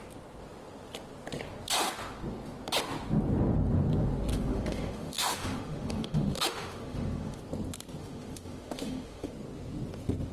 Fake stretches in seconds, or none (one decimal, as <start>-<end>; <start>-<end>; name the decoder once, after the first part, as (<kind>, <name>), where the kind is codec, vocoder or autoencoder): 4.3-7.4 (autoencoder, DAC-VAE); 8.0-9.3